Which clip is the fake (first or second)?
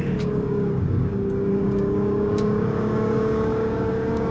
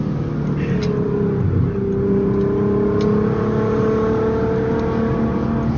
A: first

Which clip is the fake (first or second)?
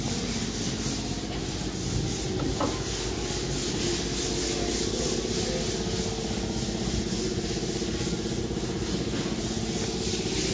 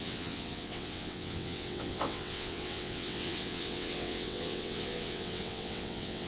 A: second